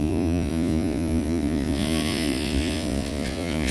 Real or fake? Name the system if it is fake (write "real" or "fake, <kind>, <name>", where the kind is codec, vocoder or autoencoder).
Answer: fake, vocoder, Vocos